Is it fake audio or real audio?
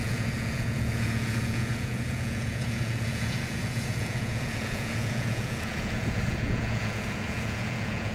fake